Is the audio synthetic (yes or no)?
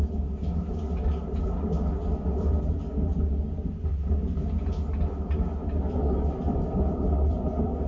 no